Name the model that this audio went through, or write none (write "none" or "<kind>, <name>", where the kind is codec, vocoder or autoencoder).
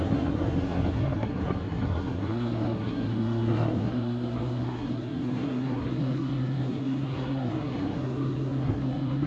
codec, SNAC